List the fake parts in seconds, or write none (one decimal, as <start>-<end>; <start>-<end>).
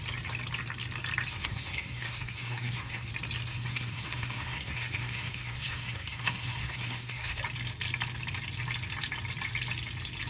1.3-3.1; 3.5-7.4